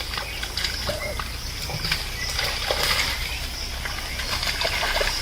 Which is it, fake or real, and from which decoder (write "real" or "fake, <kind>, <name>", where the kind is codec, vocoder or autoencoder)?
real